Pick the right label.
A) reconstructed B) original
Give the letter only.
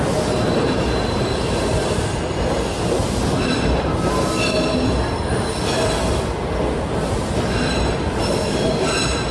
B